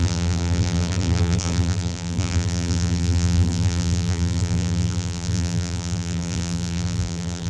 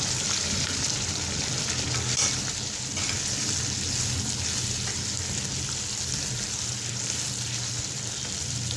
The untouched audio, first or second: second